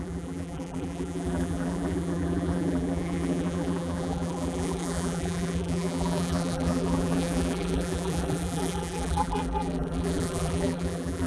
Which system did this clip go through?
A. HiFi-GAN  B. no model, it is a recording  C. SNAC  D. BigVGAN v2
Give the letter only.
D